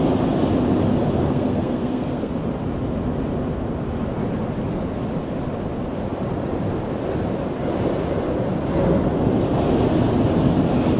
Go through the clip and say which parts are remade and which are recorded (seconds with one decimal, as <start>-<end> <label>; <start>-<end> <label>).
0.0-1.2 recorded; 1.2-2.3 remade; 2.3-11.0 recorded